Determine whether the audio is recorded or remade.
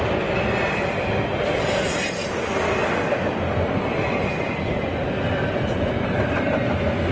recorded